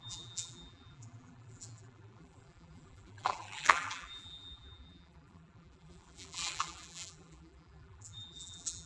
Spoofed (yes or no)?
yes